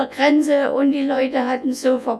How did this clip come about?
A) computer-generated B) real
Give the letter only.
A